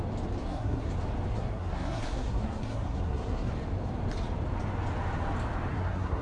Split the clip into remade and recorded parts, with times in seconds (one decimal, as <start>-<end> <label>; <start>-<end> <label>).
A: 0.0-0.4 recorded; 0.4-0.9 remade; 0.9-1.3 recorded; 1.3-3.5 remade; 3.5-5.7 recorded; 5.7-6.2 remade